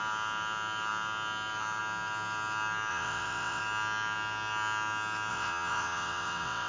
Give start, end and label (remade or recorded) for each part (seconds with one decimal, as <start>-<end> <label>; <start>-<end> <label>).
0.0-2.9 recorded; 2.9-3.6 remade; 3.6-5.3 recorded; 5.3-6.7 remade